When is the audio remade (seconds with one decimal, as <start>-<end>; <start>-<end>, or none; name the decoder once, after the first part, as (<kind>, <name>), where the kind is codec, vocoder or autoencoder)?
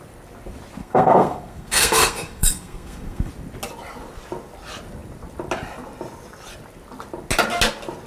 0.8-3.3 (codec, SNAC)